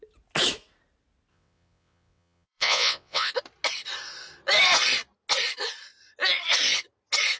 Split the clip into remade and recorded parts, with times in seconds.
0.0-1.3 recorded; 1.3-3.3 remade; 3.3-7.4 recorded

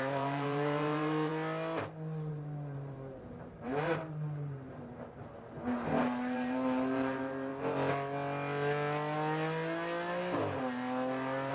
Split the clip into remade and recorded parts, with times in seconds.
0.0-1.3 remade; 1.3-2.3 recorded; 2.3-7.5 remade; 7.5-11.5 recorded

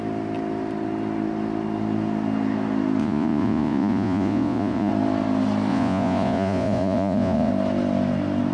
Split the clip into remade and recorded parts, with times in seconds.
0.0-3.0 recorded; 3.0-4.9 remade; 4.9-5.7 recorded; 5.7-7.5 remade; 7.5-8.5 recorded